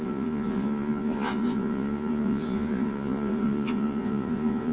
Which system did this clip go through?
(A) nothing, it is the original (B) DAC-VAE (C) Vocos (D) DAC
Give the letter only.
C